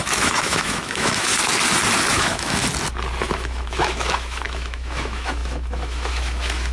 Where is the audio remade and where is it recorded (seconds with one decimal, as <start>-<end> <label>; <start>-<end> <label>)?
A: 0.0-1.3 remade; 1.3-2.1 recorded; 2.1-2.6 remade; 2.6-3.3 recorded; 3.3-6.7 remade